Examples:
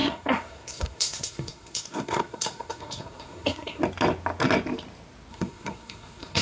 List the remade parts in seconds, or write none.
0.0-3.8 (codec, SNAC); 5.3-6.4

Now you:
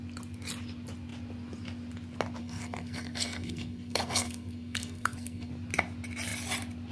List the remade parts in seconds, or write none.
2.4-5.5 (codec, SNAC)